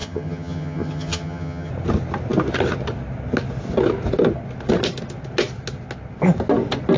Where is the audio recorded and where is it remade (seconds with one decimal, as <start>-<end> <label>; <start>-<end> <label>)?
0.0-1.7 remade; 1.7-7.0 recorded